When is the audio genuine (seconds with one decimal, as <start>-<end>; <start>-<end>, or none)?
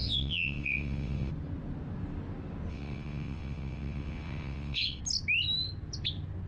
1.3-2.7; 5.0-6.5